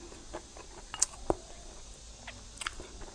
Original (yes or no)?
yes